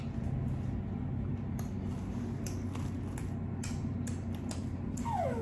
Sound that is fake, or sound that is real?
real